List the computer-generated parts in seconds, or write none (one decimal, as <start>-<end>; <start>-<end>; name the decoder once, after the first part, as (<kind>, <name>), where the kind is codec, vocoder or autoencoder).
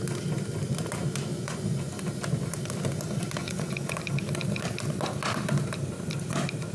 1.3-1.9 (vocoder, Vocos); 3.4-4.0